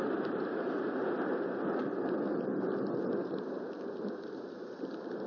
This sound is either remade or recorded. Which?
recorded